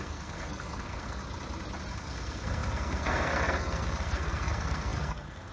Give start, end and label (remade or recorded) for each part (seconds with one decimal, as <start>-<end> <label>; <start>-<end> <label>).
0.0-1.2 remade; 1.2-1.9 recorded; 1.9-5.5 remade